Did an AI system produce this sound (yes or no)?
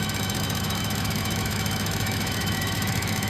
yes